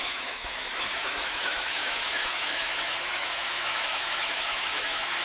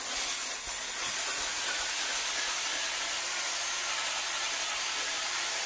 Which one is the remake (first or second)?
first